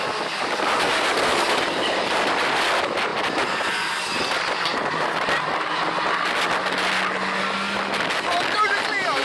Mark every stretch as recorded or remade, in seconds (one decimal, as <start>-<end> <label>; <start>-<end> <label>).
0.0-3.1 recorded; 3.1-4.0 remade; 4.0-9.2 recorded